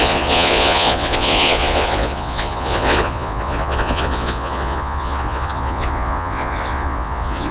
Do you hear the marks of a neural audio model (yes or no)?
yes